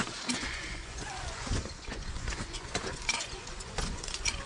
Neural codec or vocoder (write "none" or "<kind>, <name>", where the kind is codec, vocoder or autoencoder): vocoder, Vocos